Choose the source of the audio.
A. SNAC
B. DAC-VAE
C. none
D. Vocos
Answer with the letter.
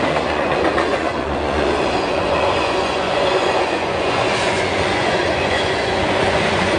D